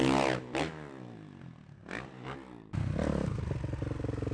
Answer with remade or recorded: recorded